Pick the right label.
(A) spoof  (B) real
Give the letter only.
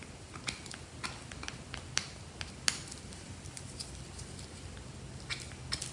B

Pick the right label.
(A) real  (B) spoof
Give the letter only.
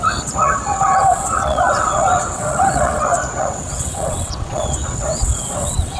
B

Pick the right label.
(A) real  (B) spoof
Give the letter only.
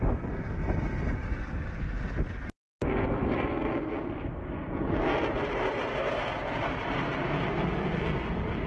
A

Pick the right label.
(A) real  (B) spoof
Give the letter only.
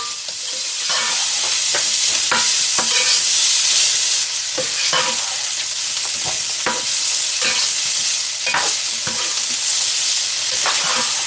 A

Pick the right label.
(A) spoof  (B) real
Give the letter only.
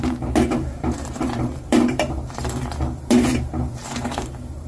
A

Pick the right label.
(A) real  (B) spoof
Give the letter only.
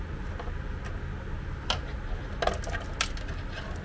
A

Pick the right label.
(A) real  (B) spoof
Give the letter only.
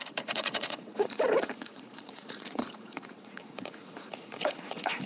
B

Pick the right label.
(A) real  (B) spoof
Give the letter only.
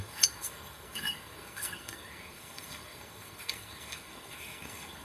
B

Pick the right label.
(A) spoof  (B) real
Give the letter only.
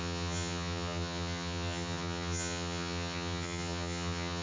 A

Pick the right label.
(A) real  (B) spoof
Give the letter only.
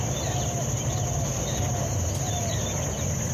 A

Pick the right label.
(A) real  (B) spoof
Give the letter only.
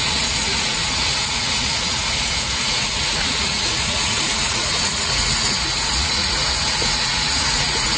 B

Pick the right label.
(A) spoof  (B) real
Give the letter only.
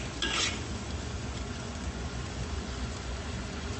A